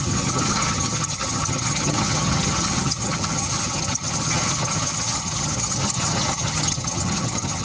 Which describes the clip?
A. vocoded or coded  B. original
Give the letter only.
A